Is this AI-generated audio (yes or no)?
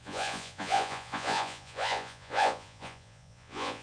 yes